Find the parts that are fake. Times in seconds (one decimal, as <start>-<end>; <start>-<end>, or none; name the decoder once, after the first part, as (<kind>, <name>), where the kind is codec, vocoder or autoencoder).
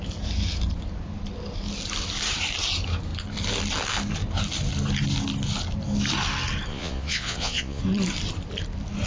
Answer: 6.7-7.8 (vocoder, Vocos)